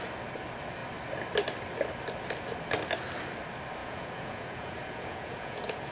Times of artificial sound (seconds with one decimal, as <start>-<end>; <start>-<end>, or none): 3.8-5.9